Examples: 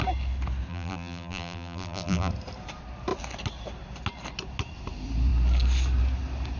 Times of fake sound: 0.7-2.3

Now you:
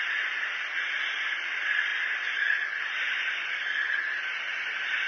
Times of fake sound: none

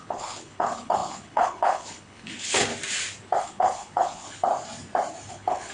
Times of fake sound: 0.0-2.7; 3.4-4.5; 5.3-5.7

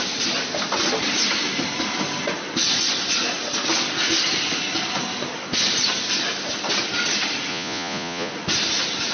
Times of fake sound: 7.5-8.3

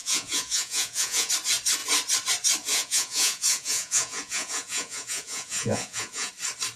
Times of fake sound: 0.0-1.3; 2.7-6.3

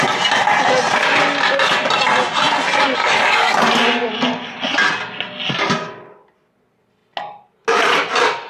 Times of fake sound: 3.0-3.7